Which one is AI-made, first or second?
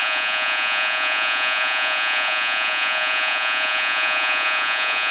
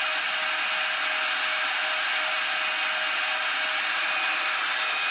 first